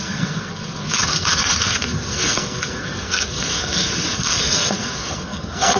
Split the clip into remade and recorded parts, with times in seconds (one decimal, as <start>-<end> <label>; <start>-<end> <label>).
0.0-5.8 remade

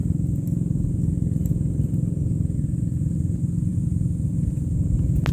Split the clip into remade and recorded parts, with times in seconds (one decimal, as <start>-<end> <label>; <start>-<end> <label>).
0.0-5.3 recorded

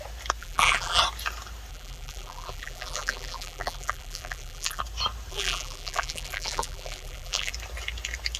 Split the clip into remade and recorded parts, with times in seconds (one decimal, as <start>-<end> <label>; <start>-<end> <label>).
0.0-0.4 recorded; 0.4-1.0 remade; 1.0-1.7 recorded; 1.7-4.8 remade; 4.8-5.3 recorded; 5.3-7.5 remade; 7.5-8.4 recorded

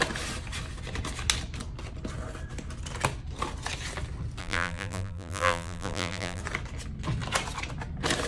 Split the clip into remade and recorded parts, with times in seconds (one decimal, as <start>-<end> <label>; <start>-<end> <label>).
0.0-4.4 recorded; 4.4-6.4 remade; 6.4-8.3 recorded

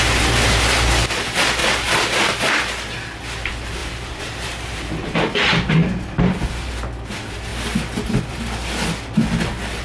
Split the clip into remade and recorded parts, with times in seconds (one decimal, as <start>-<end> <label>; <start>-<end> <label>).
0.0-3.8 recorded; 3.8-6.7 remade; 6.7-9.8 recorded

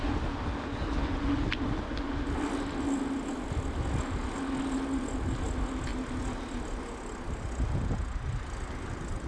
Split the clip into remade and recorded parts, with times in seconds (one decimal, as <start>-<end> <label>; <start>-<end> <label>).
0.0-9.3 recorded

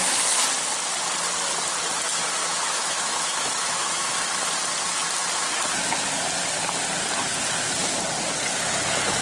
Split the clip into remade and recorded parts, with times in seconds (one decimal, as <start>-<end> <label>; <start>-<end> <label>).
0.0-2.4 recorded; 2.4-4.1 remade; 4.1-9.2 recorded

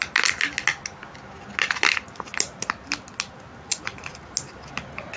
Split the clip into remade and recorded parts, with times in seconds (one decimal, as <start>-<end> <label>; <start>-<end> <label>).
0.0-5.2 recorded